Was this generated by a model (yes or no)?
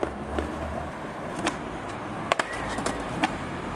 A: yes